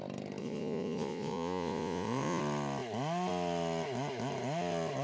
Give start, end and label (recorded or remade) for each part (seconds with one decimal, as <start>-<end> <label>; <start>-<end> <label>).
0.0-0.4 recorded; 0.4-2.4 remade; 2.4-5.0 recorded